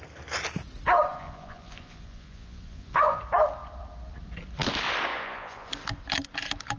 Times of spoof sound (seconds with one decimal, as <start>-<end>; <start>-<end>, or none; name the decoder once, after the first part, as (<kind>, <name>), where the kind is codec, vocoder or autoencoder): 1.1-3.2 (vocoder, Vocos); 5.1-5.7